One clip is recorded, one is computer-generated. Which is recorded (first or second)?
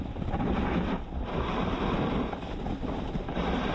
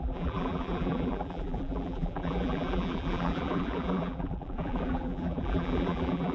first